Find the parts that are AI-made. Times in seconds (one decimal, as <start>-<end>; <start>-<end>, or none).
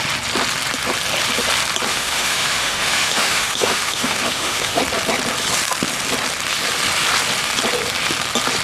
1.9-4.8